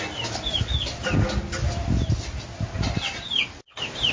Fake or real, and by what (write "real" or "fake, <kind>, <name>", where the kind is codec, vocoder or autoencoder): real